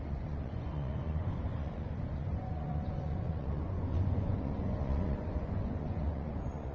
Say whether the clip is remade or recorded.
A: remade